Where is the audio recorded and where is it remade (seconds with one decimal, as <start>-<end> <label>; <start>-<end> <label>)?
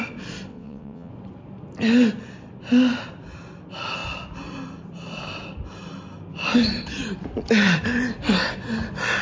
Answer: 0.0-0.5 recorded; 0.5-1.1 remade; 1.1-9.2 recorded